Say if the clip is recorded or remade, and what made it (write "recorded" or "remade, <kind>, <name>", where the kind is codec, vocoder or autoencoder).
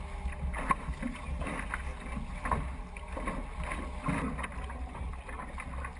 recorded